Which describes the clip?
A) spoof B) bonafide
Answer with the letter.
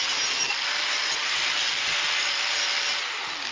B